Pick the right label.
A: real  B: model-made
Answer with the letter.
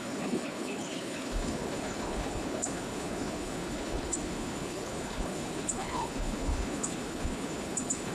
B